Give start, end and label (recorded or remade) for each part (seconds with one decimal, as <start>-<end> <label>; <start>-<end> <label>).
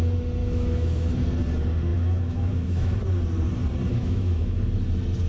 0.0-0.4 recorded; 0.4-1.2 remade; 1.2-1.9 recorded; 1.9-3.0 remade; 3.0-3.9 recorded; 3.9-4.6 remade; 4.6-5.3 recorded